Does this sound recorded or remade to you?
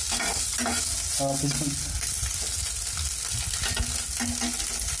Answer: recorded